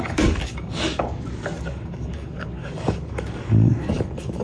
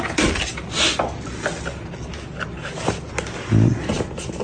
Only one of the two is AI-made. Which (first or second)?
first